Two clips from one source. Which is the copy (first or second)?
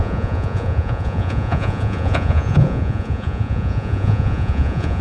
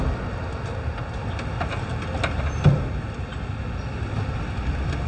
first